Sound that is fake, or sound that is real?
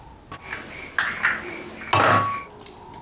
real